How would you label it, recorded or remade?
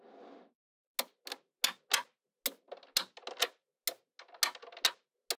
recorded